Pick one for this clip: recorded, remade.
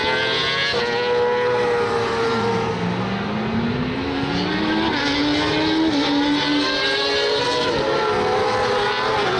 recorded